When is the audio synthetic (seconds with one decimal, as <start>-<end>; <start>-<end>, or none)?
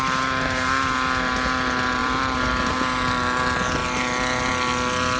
2.0-2.7